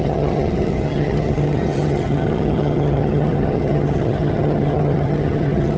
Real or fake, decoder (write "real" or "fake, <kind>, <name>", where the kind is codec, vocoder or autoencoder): fake, vocoder, HiFi-GAN